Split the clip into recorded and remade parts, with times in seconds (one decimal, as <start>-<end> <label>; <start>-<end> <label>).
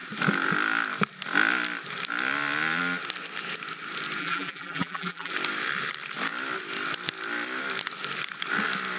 0.0-4.2 recorded; 4.2-5.3 remade; 5.3-9.0 recorded